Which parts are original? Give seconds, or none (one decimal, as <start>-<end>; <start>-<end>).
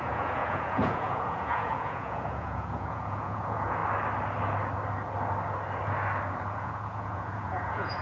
3.8-6.5